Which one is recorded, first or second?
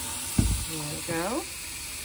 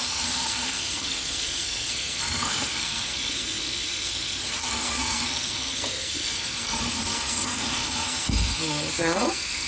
first